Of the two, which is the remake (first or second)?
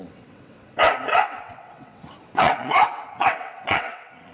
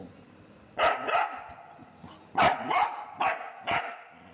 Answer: first